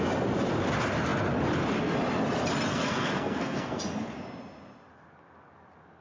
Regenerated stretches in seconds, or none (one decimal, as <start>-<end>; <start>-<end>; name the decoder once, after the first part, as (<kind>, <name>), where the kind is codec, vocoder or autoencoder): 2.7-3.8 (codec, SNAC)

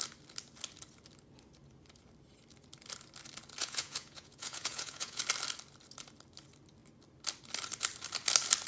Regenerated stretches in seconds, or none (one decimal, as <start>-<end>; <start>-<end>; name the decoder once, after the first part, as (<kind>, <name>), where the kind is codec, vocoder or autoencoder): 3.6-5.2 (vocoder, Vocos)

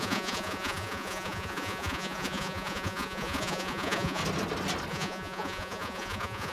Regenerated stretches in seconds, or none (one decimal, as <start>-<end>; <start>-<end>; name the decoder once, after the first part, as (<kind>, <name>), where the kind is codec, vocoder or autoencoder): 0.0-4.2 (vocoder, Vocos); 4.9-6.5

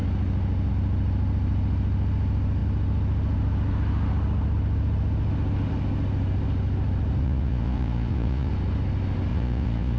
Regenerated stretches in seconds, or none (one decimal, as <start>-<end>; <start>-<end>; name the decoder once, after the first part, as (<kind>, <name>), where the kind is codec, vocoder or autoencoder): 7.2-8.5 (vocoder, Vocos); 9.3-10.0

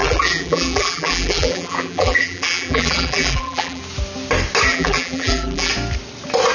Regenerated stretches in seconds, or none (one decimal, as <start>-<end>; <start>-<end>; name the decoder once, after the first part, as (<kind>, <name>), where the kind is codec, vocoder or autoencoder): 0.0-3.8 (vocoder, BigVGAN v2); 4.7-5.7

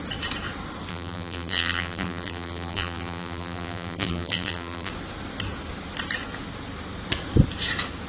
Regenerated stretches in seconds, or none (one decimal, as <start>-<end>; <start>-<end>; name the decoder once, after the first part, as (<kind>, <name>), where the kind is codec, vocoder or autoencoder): 0.9-4.9 (vocoder, BigVGAN v2)